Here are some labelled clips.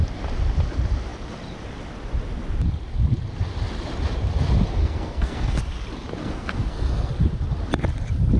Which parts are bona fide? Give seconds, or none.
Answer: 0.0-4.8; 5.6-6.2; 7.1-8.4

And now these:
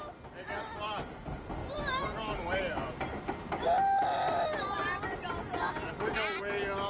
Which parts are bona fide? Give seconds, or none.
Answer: 0.0-1.6; 5.7-6.9

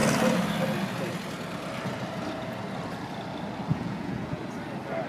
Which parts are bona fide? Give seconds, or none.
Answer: 0.0-3.7; 4.4-5.1

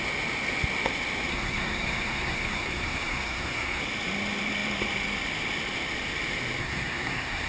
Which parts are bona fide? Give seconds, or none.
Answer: 0.0-1.3; 3.8-6.6

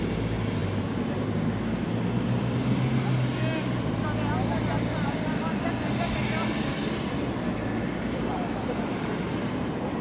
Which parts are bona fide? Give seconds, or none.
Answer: 0.0-0.6; 1.2-8.3; 9.5-10.0

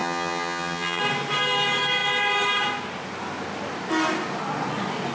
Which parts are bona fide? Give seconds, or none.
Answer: 1.0-5.1

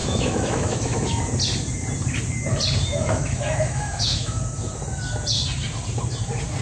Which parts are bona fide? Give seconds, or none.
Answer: 1.2-2.9; 4.4-6.6

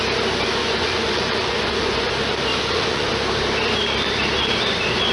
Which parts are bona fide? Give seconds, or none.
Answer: 0.0-0.6; 2.1-2.5; 3.1-5.1